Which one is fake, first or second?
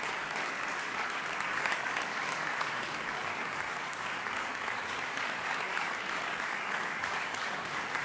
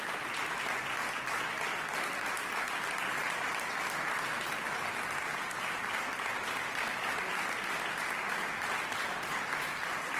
first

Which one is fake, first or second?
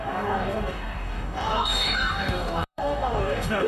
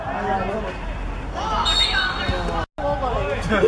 first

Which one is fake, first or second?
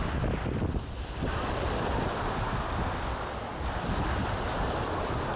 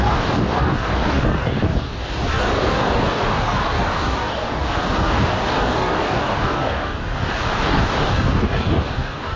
second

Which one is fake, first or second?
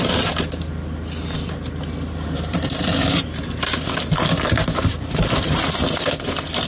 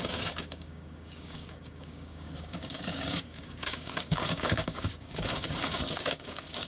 second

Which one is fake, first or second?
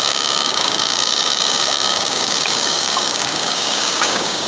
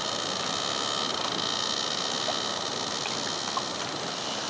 first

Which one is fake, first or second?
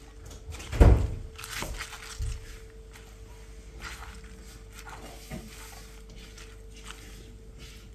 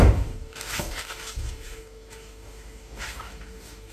second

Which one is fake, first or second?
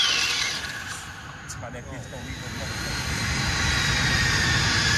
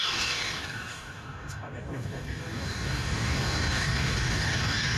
second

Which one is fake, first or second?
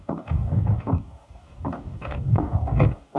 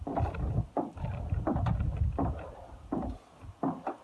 first